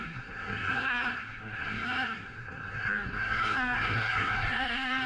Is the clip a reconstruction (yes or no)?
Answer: yes